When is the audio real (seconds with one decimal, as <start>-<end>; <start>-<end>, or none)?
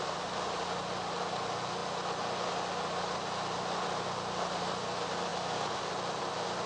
0.0-6.7